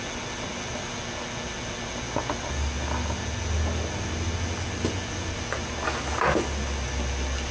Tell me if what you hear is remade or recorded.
recorded